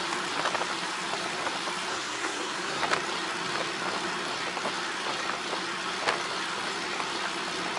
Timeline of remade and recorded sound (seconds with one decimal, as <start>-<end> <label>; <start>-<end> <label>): 0.0-1.9 recorded; 1.9-2.8 remade; 2.8-7.8 recorded

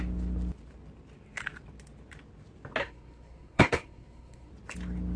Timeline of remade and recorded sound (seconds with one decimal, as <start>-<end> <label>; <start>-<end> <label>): 0.0-2.8 recorded; 2.8-4.5 remade; 4.5-5.2 recorded